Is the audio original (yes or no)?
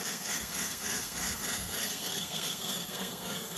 no